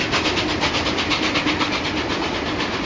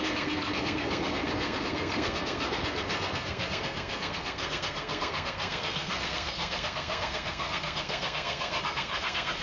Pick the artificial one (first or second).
second